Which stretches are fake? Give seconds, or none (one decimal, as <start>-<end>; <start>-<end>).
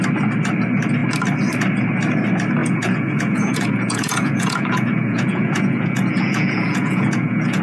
2.6-7.6